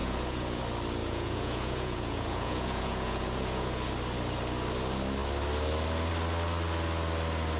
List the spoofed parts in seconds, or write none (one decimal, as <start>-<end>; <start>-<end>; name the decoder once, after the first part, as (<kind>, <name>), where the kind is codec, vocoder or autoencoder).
0.0-0.6 (vocoder, Vocos); 1.0-3.9